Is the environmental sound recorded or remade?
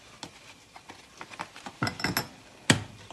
recorded